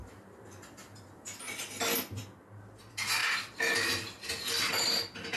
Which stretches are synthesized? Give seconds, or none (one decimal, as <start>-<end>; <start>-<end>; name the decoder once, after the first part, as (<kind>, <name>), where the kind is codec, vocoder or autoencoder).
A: none